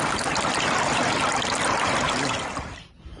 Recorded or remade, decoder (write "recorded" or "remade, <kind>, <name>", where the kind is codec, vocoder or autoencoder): recorded